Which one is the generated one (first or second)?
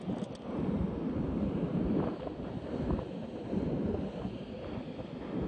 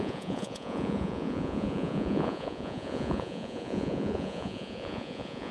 second